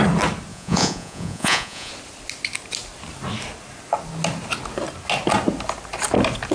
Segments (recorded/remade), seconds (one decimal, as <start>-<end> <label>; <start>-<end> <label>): 0.0-0.5 recorded; 0.5-1.9 remade; 1.9-6.5 recorded

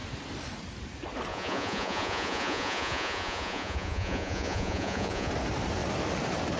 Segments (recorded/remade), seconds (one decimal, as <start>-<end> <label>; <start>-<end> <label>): 0.0-1.3 recorded; 1.3-5.3 remade; 5.3-6.6 recorded

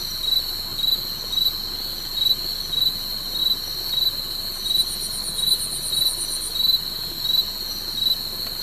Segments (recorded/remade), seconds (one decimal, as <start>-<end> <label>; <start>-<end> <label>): 0.0-8.6 recorded

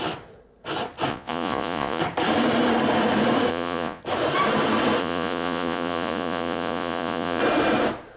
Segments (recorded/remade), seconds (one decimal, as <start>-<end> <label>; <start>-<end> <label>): 0.0-1.1 recorded; 1.1-2.0 remade; 2.0-3.5 recorded; 3.5-4.0 remade; 4.0-5.0 recorded; 5.0-7.4 remade; 7.4-8.2 recorded

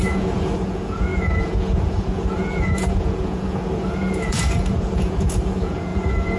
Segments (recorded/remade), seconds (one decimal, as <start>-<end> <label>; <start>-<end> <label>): 0.0-6.4 remade

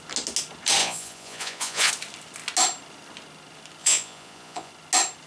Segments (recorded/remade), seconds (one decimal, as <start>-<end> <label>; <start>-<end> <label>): 0.0-0.8 recorded; 0.8-1.9 remade; 1.9-3.8 recorded; 3.8-4.7 remade; 4.7-5.3 recorded

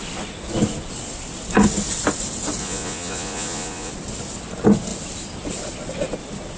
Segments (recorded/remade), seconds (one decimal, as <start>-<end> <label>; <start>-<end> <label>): 0.0-2.6 recorded; 2.6-3.9 remade; 3.9-6.6 recorded

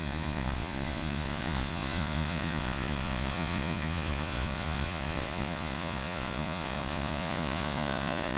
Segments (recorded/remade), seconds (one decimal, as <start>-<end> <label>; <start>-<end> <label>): 0.0-8.4 remade